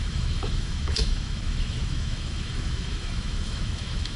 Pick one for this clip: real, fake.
fake